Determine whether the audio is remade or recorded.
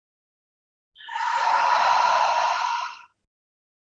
recorded